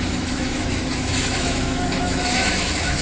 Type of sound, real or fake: fake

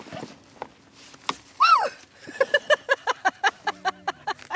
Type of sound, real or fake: real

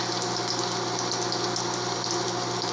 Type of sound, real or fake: real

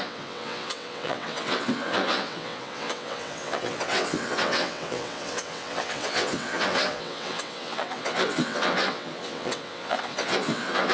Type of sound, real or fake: fake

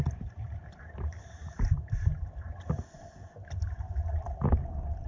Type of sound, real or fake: fake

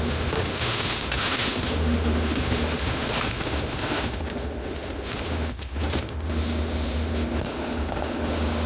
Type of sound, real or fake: fake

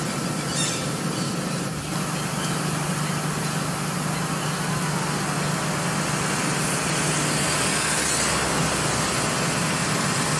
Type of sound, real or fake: real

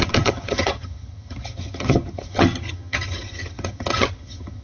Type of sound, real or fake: fake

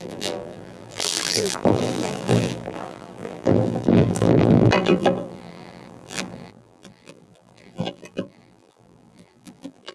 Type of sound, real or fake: fake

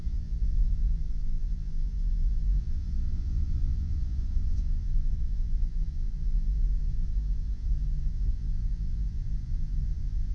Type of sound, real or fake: fake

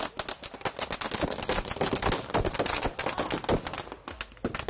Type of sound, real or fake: real